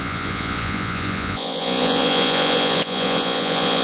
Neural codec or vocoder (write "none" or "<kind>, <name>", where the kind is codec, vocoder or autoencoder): vocoder, Vocos